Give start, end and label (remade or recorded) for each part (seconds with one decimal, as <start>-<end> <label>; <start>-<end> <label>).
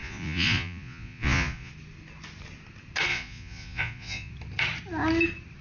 0.0-1.7 remade; 1.7-3.1 recorded; 3.1-4.3 remade; 4.3-5.6 recorded